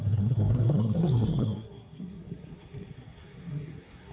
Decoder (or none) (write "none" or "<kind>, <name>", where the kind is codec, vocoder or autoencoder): codec, SNAC